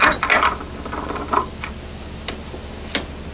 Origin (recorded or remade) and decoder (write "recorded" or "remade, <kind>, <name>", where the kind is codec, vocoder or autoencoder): recorded